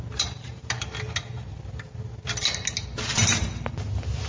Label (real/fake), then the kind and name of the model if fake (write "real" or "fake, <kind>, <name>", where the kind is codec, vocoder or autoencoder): real